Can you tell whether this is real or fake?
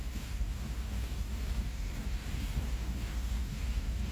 fake